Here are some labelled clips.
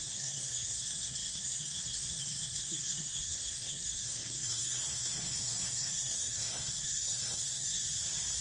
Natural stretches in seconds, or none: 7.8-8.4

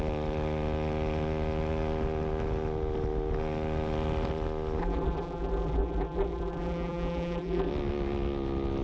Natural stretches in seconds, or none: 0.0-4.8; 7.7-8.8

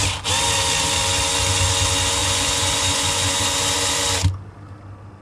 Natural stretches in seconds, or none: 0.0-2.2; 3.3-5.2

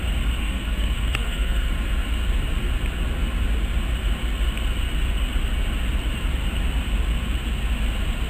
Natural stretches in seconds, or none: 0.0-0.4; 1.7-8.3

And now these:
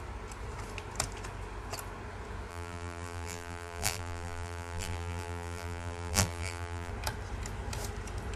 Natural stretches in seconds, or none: 0.0-2.5; 6.9-8.4